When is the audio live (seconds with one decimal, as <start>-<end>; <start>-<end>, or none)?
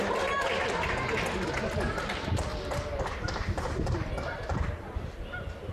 0.0-5.7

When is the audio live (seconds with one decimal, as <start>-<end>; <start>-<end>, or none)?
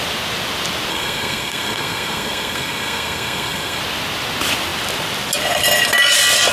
0.0-0.9; 3.8-6.5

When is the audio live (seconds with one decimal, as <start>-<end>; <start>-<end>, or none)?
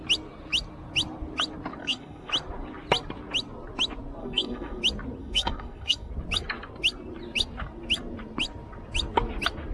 0.0-1.8; 2.3-4.2; 4.8-5.2; 6.1-9.7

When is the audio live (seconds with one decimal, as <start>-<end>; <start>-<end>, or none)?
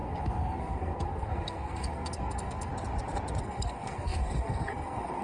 2.7-3.4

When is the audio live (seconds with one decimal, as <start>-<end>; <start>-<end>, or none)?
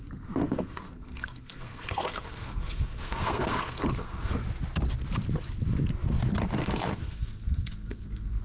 0.0-0.5; 4.3-6.6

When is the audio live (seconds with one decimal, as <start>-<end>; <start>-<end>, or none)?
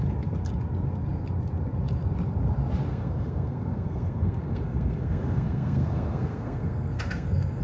0.0-2.9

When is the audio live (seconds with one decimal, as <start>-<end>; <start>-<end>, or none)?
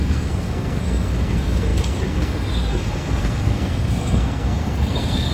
none